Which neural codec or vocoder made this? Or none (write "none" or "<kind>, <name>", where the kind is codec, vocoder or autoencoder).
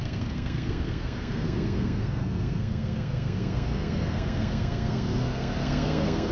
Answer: codec, SNAC